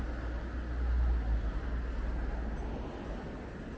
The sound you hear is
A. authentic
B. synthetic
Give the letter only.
A